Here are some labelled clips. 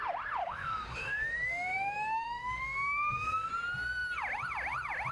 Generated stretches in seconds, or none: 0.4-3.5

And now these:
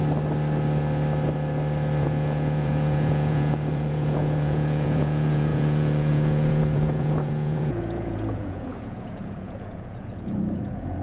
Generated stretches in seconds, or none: 2.0-11.0

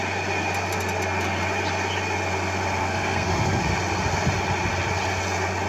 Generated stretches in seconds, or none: 2.8-3.6

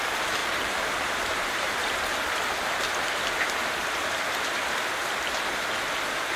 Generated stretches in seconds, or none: 0.4-2.2